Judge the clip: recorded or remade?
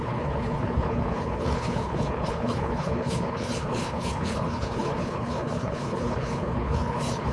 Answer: remade